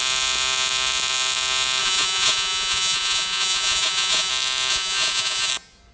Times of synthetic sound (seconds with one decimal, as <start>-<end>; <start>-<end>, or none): 1.8-4.3; 4.7-5.5